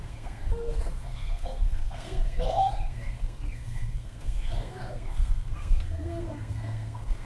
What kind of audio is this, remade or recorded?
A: remade